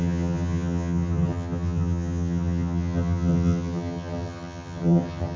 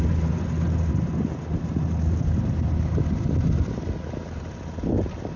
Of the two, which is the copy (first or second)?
first